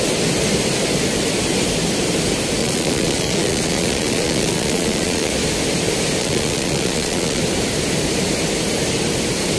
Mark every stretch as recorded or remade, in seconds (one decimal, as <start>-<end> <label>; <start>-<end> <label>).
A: 0.0-2.6 recorded; 2.6-5.3 remade; 5.3-6.2 recorded; 6.2-7.4 remade; 7.4-9.6 recorded